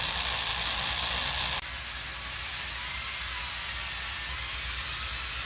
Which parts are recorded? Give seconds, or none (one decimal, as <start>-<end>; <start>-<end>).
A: 0.0-5.4